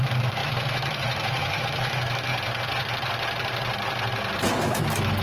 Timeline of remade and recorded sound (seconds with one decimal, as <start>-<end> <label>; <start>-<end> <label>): 0.0-2.3 remade; 2.3-4.6 recorded; 4.6-5.2 remade